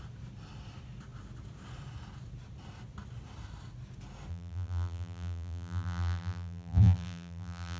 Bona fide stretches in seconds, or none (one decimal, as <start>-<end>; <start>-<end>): 0.0-4.3